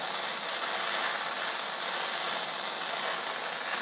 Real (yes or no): yes